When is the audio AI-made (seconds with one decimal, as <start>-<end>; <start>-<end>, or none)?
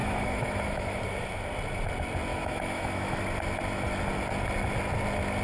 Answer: 0.0-1.0; 2.3-3.2